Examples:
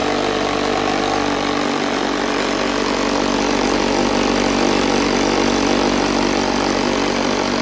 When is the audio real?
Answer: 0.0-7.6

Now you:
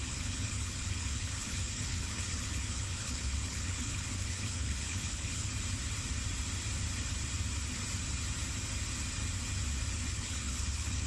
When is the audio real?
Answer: 5.5-10.1

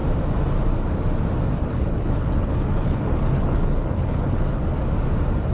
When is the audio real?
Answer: 0.0-1.6; 4.6-5.5